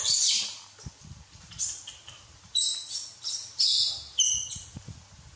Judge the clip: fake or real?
real